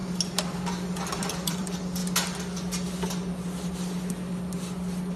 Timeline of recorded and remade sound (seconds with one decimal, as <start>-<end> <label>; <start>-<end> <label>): 0.0-1.1 recorded; 1.1-2.0 remade; 2.0-5.2 recorded

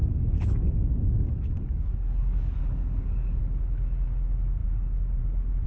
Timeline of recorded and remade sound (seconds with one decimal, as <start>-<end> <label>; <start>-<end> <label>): 0.0-3.4 remade; 3.4-5.7 recorded